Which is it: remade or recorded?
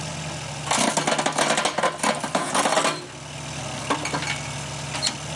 recorded